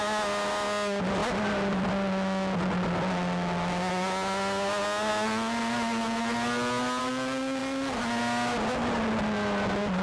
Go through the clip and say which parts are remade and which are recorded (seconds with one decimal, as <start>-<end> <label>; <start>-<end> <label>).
0.0-10.0 recorded